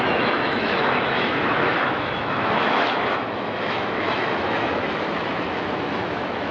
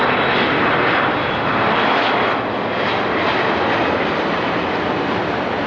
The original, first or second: second